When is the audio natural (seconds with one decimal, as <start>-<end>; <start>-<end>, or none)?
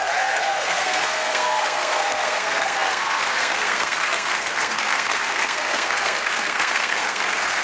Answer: none